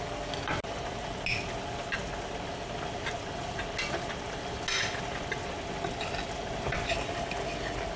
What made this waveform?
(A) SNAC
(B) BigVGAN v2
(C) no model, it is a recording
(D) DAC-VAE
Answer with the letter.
C